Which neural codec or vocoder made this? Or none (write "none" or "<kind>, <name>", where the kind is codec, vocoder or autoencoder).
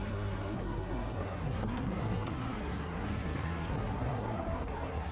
codec, SNAC